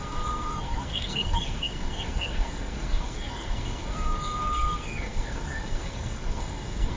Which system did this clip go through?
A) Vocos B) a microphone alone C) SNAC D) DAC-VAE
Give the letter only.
C